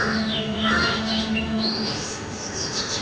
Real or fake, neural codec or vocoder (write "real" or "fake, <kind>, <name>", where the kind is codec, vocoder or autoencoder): fake, autoencoder, DAC-VAE